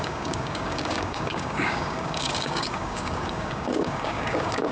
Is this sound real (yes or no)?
no